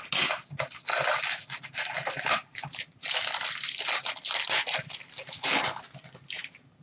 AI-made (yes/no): no